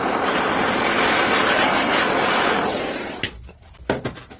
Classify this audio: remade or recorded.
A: recorded